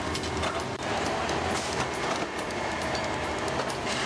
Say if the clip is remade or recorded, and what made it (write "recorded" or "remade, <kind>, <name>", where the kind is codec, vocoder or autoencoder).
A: recorded